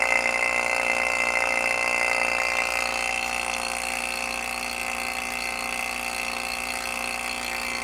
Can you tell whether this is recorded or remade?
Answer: recorded